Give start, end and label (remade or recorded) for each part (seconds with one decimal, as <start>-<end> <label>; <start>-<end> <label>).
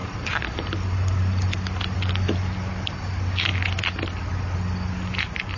0.0-5.6 recorded